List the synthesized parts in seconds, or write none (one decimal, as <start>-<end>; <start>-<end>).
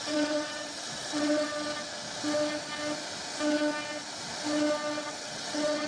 0.0-1.5; 5.0-5.9